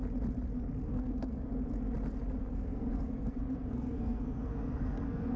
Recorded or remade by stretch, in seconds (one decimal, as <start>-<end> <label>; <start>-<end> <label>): 0.0-0.9 recorded; 0.9-1.5 remade; 1.5-2.4 recorded; 2.4-5.4 remade